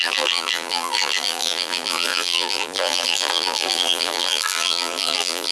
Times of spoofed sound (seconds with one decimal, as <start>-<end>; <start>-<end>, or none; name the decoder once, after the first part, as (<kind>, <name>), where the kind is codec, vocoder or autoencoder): 0.0-5.5 (vocoder, BigVGAN v2)